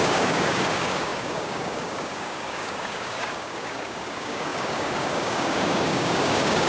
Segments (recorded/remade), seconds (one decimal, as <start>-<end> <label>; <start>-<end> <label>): 0.0-6.7 remade